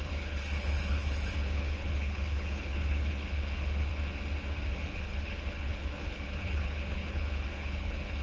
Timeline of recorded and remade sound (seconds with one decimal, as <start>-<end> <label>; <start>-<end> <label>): 0.0-3.9 remade; 3.9-4.7 recorded; 4.7-8.2 remade